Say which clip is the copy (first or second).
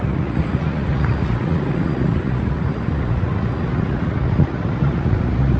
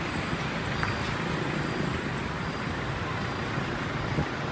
first